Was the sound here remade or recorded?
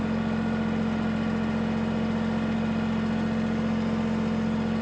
recorded